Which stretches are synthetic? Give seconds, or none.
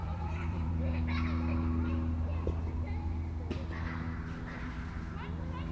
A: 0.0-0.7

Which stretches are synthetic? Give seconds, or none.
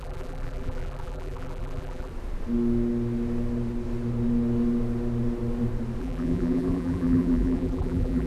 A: 0.0-2.1; 6.0-8.3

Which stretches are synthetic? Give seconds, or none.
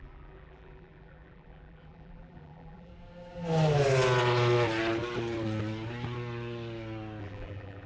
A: 0.0-2.9; 7.2-7.9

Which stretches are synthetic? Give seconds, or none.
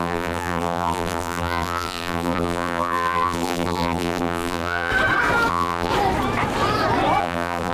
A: 0.0-4.9; 5.5-5.9; 7.2-7.7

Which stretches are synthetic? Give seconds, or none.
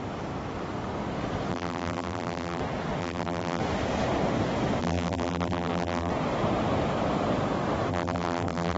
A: 1.5-2.6; 3.0-3.6; 4.8-6.1; 7.9-8.8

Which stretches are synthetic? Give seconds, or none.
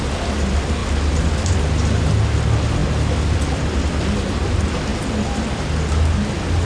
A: none